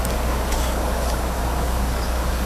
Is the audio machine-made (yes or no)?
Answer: yes